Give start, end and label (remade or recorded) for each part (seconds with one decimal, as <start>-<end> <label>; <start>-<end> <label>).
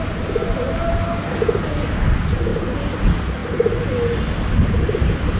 0.0-5.4 recorded